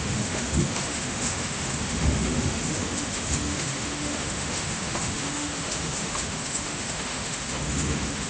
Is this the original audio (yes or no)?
no